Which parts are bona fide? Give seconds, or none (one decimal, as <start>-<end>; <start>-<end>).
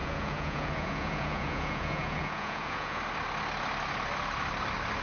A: 3.0-5.0